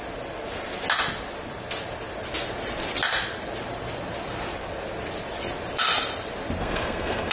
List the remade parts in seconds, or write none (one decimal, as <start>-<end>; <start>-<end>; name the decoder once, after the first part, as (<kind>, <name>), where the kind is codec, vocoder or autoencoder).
6.6-7.3 (codec, SNAC)